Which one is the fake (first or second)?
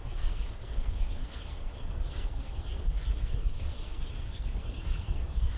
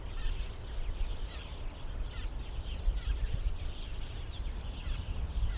first